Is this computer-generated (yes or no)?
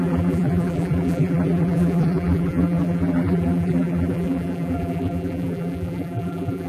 yes